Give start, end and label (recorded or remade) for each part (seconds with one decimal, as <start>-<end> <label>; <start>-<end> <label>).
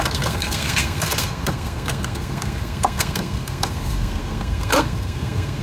0.0-5.6 remade